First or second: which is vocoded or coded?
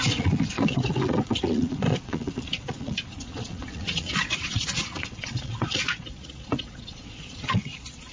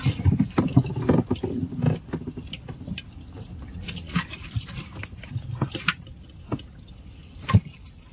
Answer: first